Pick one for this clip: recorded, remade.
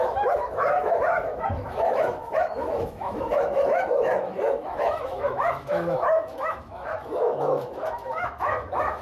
remade